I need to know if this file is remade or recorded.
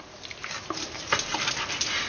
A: recorded